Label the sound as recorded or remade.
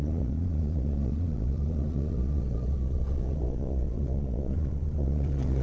remade